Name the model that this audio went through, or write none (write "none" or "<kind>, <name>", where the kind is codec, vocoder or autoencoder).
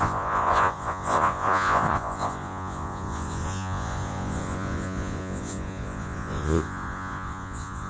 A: vocoder, Vocos